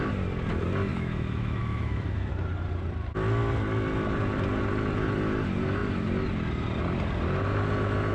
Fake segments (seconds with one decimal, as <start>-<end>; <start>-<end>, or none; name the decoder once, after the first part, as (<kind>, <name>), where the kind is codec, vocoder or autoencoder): 0.9-2.3 (autoencoder, DAC-VAE)